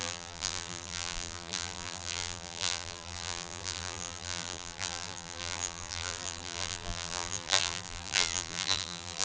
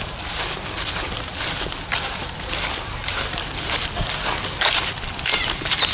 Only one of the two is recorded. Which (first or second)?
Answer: second